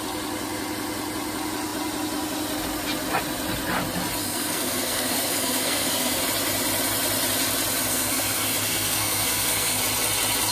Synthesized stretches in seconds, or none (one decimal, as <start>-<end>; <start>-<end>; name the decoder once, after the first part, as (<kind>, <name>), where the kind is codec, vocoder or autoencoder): 4.2-6.2 (codec, SNAC); 7.9-9.8